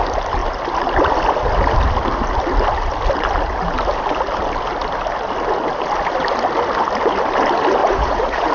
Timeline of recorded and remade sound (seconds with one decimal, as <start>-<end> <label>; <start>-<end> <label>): 0.0-7.8 recorded; 7.8-8.5 remade